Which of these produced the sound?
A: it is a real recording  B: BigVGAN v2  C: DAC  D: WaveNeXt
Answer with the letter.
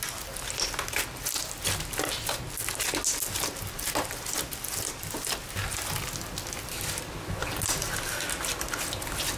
A